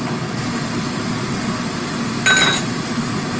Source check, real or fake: real